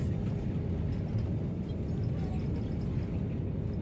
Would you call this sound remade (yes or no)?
no